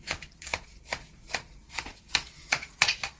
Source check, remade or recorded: remade